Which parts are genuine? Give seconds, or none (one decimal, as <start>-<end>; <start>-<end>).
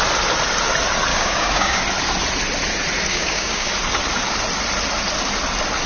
0.0-1.1; 1.8-3.1; 3.7-5.9